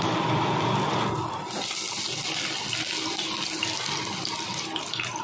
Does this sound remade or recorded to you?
recorded